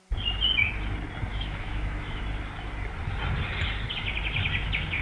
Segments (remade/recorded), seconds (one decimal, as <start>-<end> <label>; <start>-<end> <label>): 0.0-1.3 recorded; 1.3-2.2 remade; 2.2-5.0 recorded